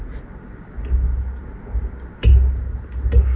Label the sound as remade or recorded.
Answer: recorded